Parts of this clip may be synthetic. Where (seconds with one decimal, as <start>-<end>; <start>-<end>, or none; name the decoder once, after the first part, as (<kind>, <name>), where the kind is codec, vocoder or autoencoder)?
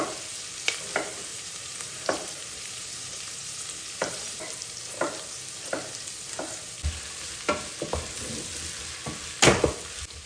1.3-4.4 (vocoder, BigVGAN v2)